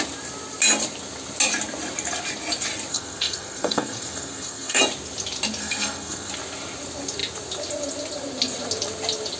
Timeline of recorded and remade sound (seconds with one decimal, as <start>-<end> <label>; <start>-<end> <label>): 0.0-2.9 recorded; 2.9-4.8 remade; 4.8-5.6 recorded; 5.6-6.3 remade; 6.3-9.4 recorded